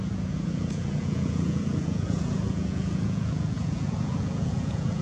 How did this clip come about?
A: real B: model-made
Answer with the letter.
B